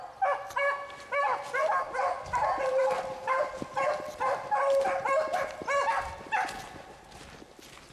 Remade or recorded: recorded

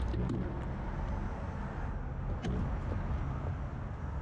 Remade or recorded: recorded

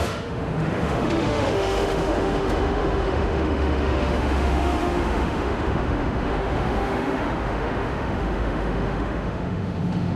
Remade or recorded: remade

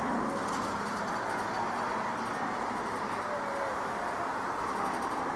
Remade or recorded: recorded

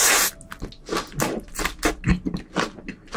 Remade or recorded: recorded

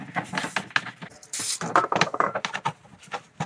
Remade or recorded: recorded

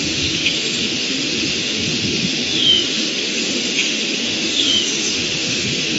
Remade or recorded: remade